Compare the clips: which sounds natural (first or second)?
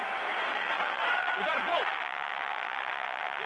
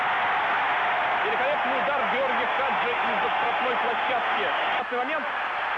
second